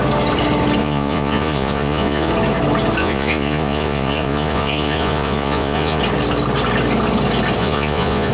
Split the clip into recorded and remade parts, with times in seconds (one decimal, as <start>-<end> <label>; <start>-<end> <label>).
0.0-0.8 recorded; 0.8-2.3 remade; 2.3-3.0 recorded; 3.0-6.0 remade; 6.0-7.6 recorded; 7.6-8.3 remade